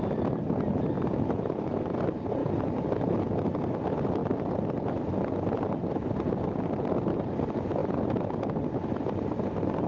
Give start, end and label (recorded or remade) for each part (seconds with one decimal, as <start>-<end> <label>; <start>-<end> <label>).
0.0-9.9 recorded